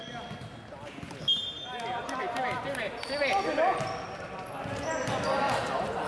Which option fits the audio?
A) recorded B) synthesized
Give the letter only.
A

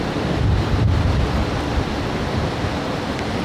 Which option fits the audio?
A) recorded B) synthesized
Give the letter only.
B